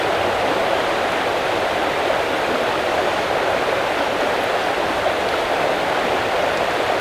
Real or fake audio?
real